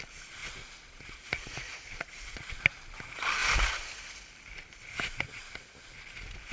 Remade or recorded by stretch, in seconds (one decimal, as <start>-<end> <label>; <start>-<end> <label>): 0.0-0.4 recorded; 0.4-2.5 remade; 2.5-6.5 recorded